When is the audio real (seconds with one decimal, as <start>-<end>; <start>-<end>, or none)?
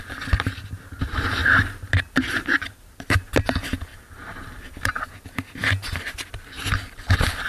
0.0-3.9; 5.0-7.5